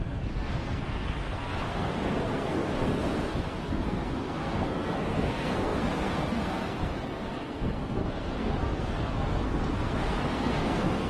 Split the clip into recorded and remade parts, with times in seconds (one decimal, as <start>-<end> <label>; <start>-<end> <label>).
0.0-11.1 remade